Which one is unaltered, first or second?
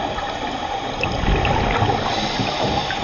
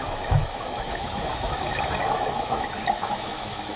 first